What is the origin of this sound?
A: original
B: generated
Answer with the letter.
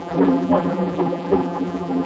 B